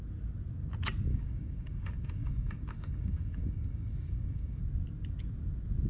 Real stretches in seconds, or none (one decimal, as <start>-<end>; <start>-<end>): 0.0-1.1; 4.6-5.9